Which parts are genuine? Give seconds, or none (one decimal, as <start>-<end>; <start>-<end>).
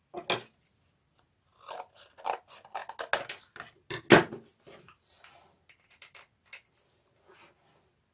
0.0-8.1